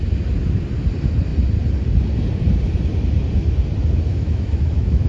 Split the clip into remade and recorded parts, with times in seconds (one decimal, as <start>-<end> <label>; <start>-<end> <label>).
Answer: 0.0-4.1 recorded; 4.1-5.1 remade